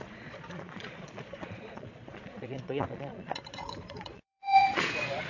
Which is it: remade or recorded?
remade